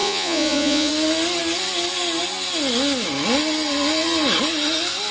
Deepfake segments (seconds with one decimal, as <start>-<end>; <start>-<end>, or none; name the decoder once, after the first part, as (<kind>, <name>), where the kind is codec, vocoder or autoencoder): 0.0-0.9 (vocoder, Vocos)

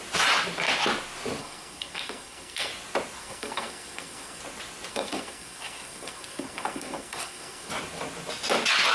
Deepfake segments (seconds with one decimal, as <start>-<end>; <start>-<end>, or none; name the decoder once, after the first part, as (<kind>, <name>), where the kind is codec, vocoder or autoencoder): 1.4-2.7 (codec, SNAC); 3.2-4.4; 4.9-7.7

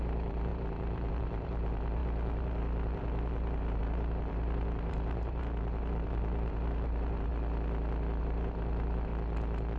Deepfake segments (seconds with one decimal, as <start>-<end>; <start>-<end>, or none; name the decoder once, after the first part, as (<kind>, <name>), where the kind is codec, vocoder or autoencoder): 0.0-7.3 (vocoder, BigVGAN v2); 8.2-9.1